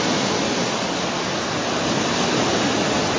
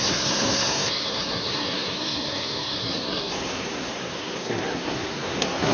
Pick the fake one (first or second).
second